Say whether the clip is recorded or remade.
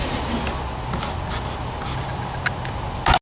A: recorded